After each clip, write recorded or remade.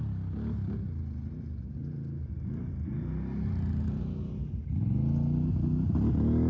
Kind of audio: recorded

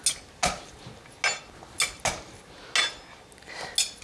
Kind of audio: recorded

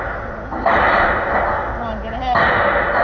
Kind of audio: recorded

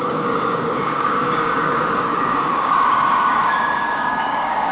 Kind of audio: remade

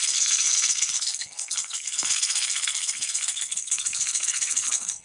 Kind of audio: remade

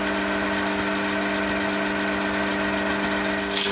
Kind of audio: recorded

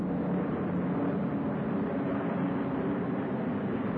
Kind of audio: recorded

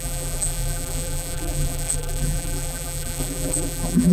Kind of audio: remade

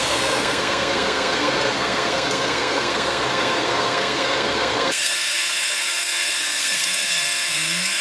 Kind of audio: remade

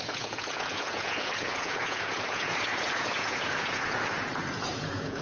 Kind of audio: remade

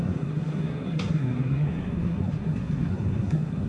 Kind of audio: remade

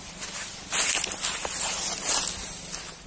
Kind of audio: recorded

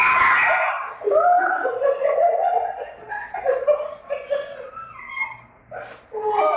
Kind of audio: recorded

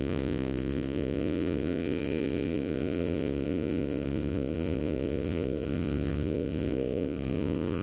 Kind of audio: remade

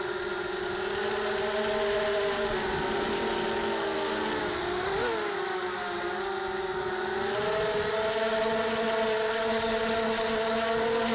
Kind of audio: recorded